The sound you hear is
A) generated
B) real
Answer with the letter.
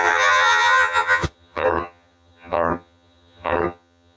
A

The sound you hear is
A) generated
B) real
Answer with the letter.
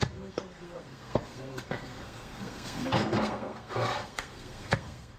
A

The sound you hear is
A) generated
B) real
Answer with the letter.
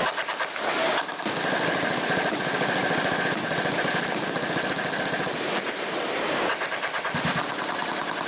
A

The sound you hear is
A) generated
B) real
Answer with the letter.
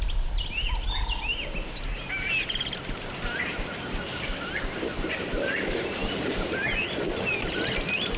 B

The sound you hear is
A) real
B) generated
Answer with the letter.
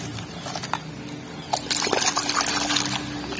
A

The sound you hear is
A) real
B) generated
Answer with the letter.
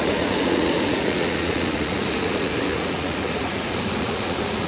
B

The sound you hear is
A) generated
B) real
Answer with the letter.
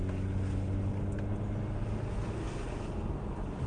B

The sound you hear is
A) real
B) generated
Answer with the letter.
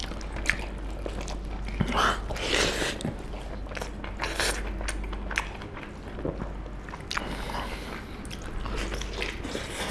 A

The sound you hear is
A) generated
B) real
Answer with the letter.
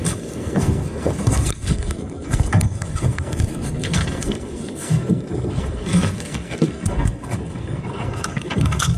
A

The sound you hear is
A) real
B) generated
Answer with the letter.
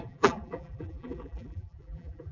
B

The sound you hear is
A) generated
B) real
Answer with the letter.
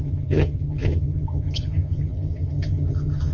A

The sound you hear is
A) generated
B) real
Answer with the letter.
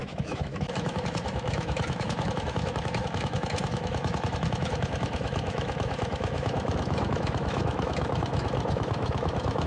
A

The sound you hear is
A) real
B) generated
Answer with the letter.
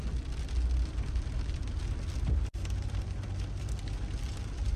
A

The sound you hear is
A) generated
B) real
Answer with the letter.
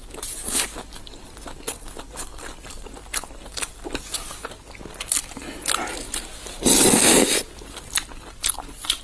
B